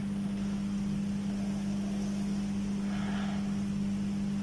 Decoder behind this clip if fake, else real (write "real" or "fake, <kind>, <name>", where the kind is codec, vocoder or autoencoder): real